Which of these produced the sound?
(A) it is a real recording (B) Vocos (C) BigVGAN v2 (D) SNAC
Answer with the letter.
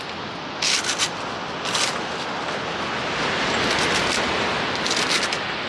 A